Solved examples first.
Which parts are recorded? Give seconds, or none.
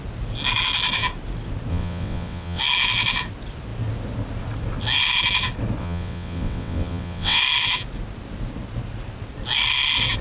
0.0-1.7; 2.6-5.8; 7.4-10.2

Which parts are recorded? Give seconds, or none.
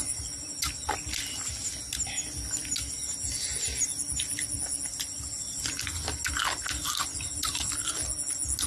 0.0-8.7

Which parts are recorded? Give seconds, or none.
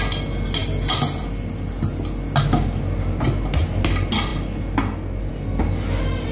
0.0-6.3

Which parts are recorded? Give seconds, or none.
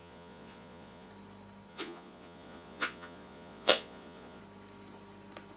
1.1-1.7; 4.4-5.6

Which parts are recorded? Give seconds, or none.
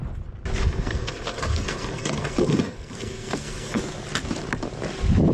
0.0-0.6; 3.8-5.3